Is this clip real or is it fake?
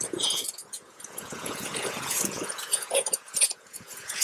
fake